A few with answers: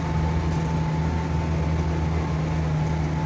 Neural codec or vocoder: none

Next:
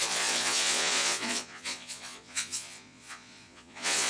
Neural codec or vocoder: vocoder, Vocos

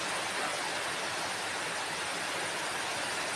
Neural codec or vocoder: none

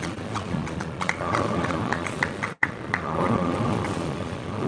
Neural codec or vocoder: vocoder, Vocos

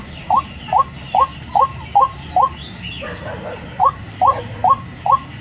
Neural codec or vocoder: none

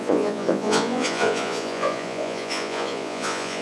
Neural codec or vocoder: vocoder, Vocos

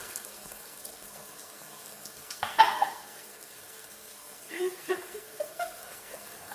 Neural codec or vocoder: codec, SNAC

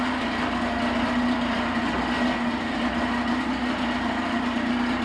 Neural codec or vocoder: none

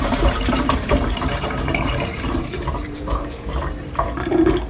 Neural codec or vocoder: vocoder, BigVGAN v2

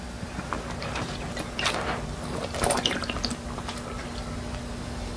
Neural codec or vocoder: none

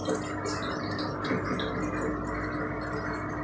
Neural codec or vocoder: none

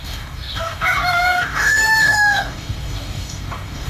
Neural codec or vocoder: codec, DAC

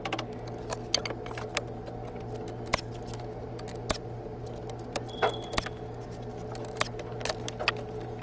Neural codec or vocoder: none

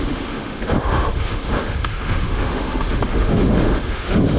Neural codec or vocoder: autoencoder, DAC-VAE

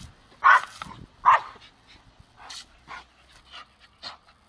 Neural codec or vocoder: none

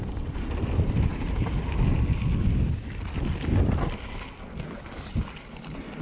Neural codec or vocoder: none